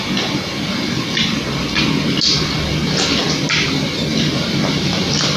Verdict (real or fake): real